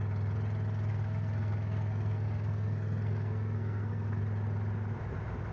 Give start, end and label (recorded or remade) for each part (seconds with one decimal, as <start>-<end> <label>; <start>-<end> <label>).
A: 0.0-0.9 recorded; 0.9-4.2 remade; 4.2-5.5 recorded

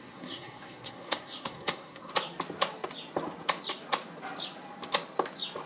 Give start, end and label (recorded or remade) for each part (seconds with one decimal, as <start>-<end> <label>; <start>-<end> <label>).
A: 0.0-2.1 remade; 2.1-5.7 recorded